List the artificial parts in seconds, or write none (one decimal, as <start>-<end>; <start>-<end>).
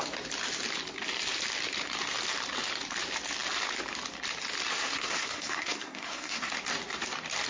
4.7-6.5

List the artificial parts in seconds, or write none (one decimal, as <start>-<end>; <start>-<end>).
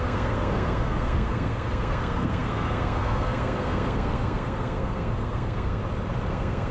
0.0-5.8; 6.3-6.7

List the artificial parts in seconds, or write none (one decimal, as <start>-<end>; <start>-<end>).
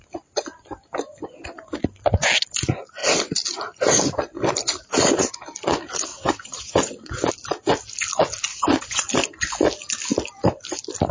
6.1-7.3; 8.5-9.0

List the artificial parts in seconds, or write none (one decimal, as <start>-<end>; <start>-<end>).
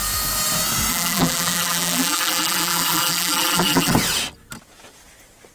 0.9-3.9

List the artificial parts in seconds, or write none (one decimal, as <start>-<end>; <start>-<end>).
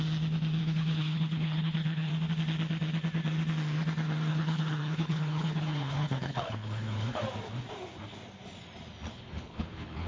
0.6-2.1; 4.3-7.2; 9.1-10.1